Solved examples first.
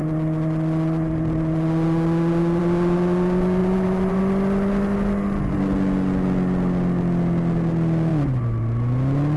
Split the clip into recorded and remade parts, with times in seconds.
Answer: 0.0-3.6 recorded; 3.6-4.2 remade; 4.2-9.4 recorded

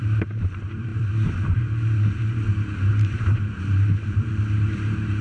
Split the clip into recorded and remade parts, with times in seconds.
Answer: 0.0-5.2 remade

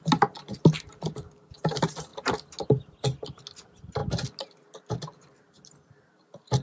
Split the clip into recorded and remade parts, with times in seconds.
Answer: 0.0-6.6 recorded

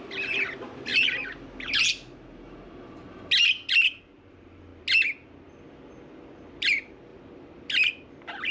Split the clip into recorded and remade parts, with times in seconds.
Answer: 0.0-0.9 remade; 0.9-4.0 recorded; 4.0-4.7 remade; 4.7-6.0 recorded; 6.0-8.5 remade

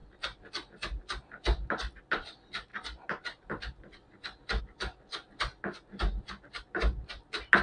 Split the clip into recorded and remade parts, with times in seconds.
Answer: 0.0-7.6 recorded